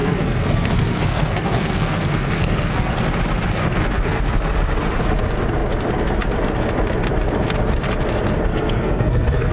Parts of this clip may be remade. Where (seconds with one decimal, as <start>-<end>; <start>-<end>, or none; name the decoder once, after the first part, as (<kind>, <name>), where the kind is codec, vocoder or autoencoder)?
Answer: 0.0-3.0 (codec, SNAC); 3.6-4.2; 8.5-9.5